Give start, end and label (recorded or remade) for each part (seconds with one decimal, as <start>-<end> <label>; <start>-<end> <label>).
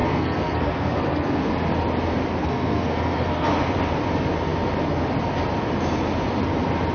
0.0-1.5 remade; 1.5-2.4 recorded; 2.4-3.5 remade; 3.5-6.9 recorded